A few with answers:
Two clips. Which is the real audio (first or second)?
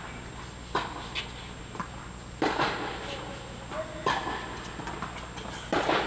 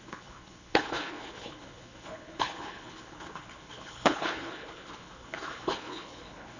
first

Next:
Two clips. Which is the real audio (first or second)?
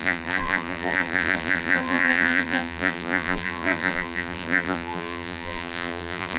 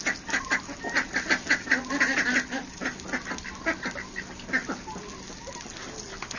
second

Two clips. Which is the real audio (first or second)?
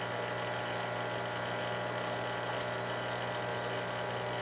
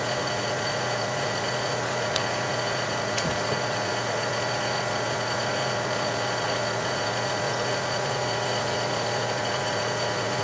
first